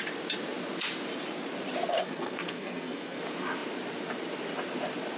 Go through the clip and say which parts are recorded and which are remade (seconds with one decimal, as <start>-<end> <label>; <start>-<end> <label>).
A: 0.0-1.9 recorded; 1.9-3.2 remade; 3.2-5.2 recorded